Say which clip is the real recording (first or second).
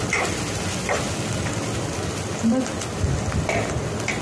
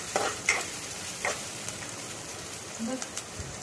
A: first